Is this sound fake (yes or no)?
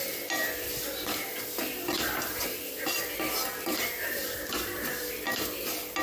no